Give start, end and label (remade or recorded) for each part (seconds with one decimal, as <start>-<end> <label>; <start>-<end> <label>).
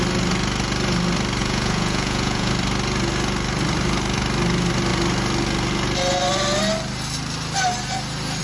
0.0-1.4 recorded; 1.4-2.5 remade; 2.5-8.4 recorded